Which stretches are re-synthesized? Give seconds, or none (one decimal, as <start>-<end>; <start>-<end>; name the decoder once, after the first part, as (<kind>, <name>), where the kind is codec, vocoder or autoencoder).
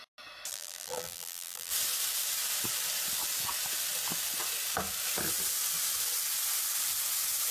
0.5-1.7 (vocoder, BigVGAN v2)